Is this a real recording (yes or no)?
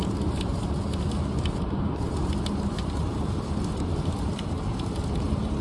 no